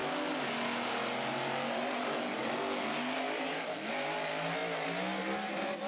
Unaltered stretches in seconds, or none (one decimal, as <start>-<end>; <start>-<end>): 0.0-5.9